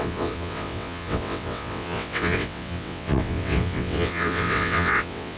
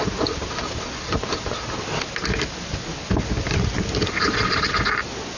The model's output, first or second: first